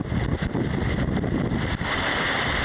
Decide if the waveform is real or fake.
real